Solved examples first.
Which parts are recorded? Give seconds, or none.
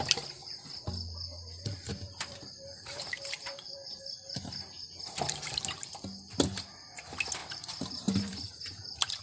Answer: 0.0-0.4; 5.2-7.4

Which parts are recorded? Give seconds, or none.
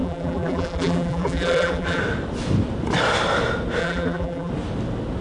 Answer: 2.0-3.8; 4.5-5.2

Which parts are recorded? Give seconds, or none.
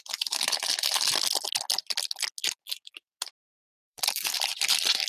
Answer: 0.7-3.8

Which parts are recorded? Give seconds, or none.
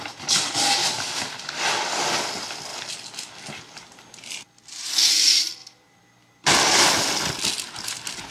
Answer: 0.0-0.8; 2.3-5.6; 6.8-8.3